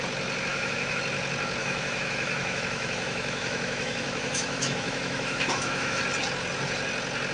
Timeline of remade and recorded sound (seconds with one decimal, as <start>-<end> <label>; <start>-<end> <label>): 0.0-0.5 recorded; 0.5-1.0 remade; 1.0-1.6 recorded; 1.6-6.0 remade; 6.0-7.3 recorded